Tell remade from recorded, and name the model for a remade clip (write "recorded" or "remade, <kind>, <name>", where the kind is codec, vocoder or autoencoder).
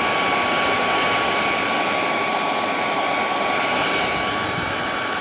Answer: recorded